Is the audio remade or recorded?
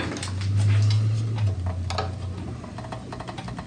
recorded